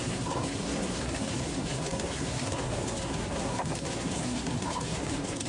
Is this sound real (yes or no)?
no